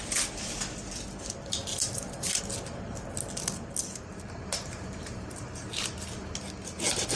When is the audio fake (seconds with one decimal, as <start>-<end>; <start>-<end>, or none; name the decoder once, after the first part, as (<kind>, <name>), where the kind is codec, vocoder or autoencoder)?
1.7-2.4 (vocoder, BigVGAN v2); 4.1-5.7